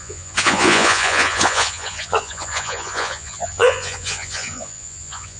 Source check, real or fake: fake